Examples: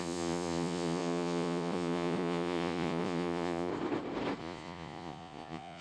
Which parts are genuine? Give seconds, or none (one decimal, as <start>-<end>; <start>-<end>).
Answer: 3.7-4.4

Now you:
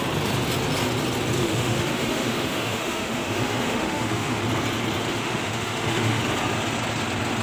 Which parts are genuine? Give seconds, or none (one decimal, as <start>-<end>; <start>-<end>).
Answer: 0.0-1.4; 4.4-5.1; 6.2-7.4

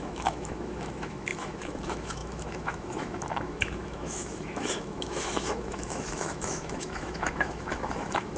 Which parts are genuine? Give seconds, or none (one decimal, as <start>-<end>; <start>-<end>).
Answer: none